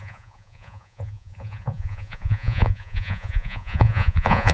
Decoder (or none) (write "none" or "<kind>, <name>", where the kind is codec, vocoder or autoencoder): vocoder, Vocos